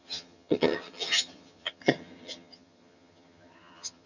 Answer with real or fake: fake